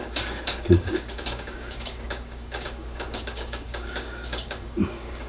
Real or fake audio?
fake